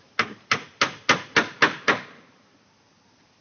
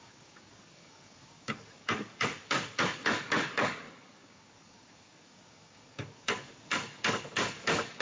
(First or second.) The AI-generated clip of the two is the second